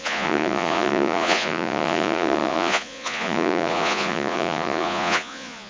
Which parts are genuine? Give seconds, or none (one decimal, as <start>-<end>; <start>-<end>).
none